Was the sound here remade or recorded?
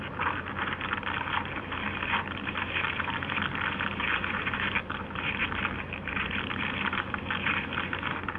recorded